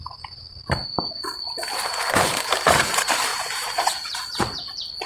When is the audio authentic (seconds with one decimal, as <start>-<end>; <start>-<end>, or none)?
0.5-1.1

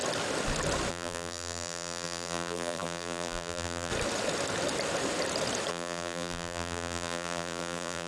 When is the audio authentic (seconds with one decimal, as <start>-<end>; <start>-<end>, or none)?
0.0-0.9; 3.9-5.7